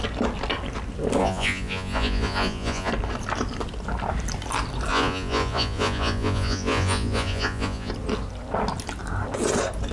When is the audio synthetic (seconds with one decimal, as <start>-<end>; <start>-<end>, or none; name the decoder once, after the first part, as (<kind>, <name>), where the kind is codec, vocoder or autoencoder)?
1.2-2.9 (vocoder, Vocos); 4.9-7.9